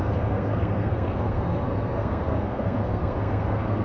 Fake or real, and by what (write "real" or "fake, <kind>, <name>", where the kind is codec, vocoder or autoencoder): fake, codec, SNAC